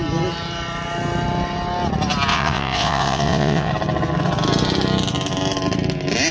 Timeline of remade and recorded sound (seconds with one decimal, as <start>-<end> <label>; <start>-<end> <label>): 0.0-2.3 recorded; 2.3-3.7 remade; 3.7-6.3 recorded